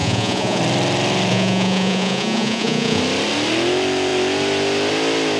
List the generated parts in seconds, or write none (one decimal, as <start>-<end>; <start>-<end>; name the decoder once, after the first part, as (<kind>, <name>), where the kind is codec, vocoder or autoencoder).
0.0-0.6 (vocoder, Vocos); 1.3-3.0